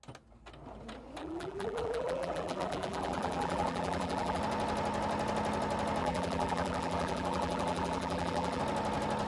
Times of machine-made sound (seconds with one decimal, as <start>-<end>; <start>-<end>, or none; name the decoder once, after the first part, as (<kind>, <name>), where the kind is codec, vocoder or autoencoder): 1.2-4.4 (vocoder, BigVGAN v2); 6.0-8.6